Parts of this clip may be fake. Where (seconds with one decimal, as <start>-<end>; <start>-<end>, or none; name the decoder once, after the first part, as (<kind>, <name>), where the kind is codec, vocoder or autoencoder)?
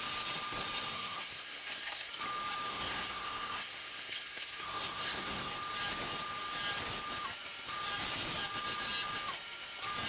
0.9-2.1 (codec, SNAC); 2.7-5.5